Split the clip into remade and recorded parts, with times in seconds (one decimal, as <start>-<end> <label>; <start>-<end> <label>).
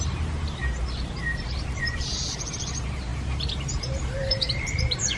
0.0-0.6 remade; 0.6-1.8 recorded; 1.8-5.2 remade